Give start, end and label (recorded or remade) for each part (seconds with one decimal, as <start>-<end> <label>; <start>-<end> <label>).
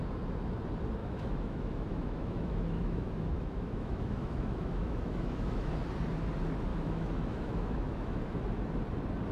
0.0-1.0 recorded; 1.0-5.7 remade; 5.7-6.7 recorded; 6.7-8.2 remade; 8.2-9.3 recorded